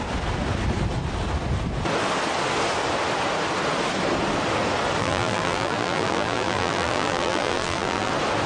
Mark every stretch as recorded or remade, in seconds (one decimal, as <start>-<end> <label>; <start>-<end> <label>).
0.0-5.0 recorded; 5.0-8.1 remade; 8.1-8.5 recorded